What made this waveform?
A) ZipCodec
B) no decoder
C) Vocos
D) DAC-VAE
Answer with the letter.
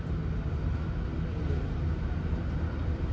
B